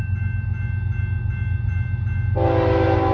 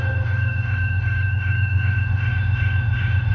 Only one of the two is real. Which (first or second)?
first